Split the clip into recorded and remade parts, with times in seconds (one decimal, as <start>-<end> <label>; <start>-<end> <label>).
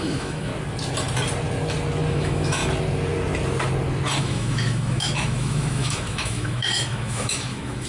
0.0-0.5 remade; 0.5-2.1 recorded; 2.1-2.6 remade; 2.6-4.2 recorded; 4.2-7.9 remade